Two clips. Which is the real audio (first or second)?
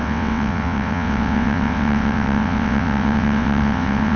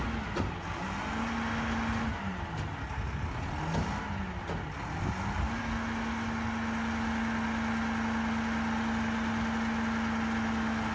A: second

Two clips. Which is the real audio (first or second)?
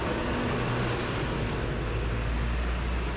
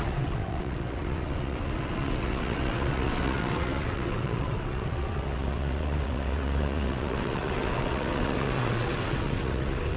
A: first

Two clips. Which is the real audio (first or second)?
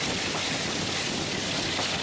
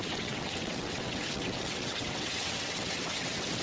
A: first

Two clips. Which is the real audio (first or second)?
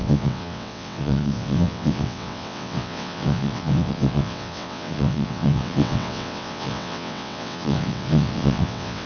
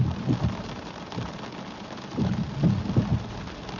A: second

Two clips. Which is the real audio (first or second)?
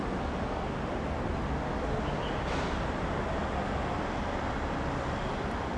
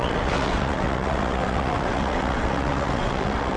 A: first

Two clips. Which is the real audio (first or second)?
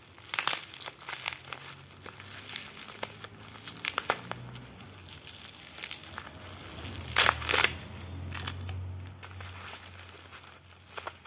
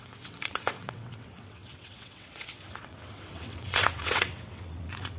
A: first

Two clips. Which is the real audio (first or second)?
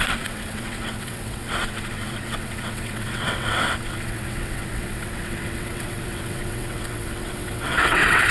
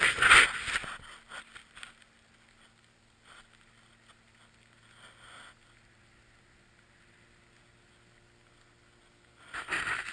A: second